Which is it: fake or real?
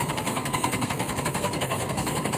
fake